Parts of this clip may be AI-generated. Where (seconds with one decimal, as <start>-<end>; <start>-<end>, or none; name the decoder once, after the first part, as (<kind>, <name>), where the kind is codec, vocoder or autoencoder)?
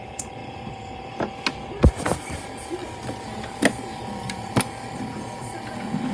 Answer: 0.4-1.1 (vocoder, BigVGAN v2); 2.8-3.3; 3.9-4.6